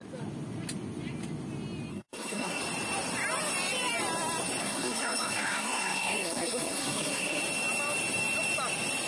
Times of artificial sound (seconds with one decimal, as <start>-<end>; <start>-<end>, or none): 1.9-2.6; 4.6-7.4